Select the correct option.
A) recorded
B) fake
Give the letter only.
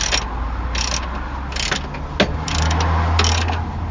A